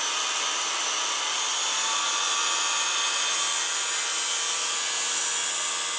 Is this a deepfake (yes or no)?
no